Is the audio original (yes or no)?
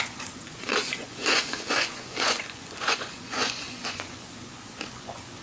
no